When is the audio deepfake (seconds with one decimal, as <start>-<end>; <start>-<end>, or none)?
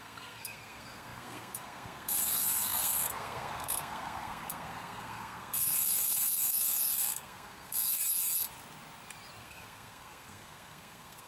0.0-8.0; 9.4-11.3